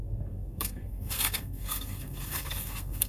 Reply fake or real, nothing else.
fake